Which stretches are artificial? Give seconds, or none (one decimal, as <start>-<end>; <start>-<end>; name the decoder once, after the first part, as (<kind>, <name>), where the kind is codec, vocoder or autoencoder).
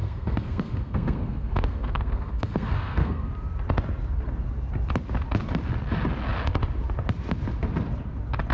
0.0-3.3 (codec, SNAC)